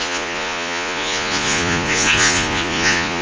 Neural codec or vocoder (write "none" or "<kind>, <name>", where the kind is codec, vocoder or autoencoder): vocoder, Vocos